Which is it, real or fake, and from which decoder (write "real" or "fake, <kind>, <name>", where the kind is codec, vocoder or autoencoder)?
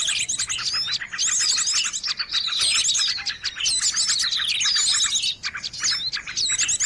real